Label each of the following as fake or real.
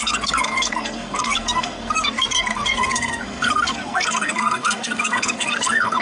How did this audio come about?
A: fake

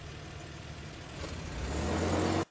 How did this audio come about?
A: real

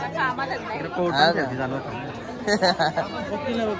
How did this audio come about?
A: real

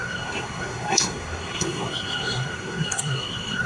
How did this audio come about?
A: fake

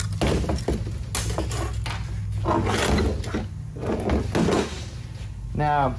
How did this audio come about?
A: real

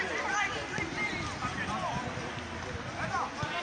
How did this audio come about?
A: real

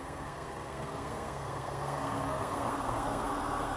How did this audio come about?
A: fake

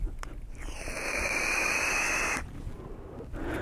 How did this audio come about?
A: real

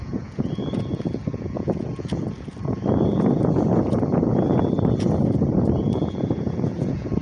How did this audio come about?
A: fake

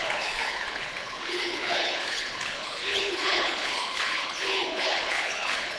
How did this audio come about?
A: fake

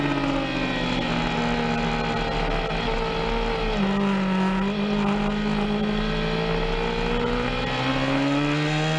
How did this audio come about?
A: real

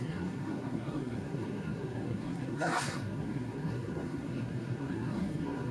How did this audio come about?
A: fake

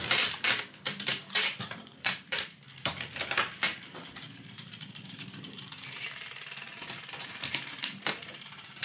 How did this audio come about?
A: fake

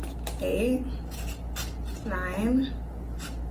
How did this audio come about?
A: real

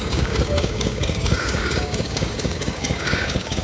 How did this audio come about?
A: fake